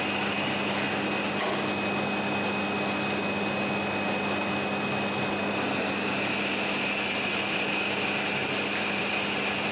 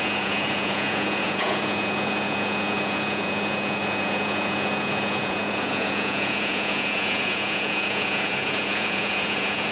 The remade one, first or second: second